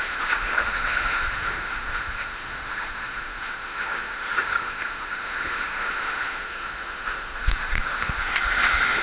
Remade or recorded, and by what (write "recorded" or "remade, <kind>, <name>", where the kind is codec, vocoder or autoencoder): remade, autoencoder, DAC-VAE